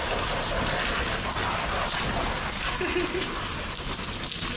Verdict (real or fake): real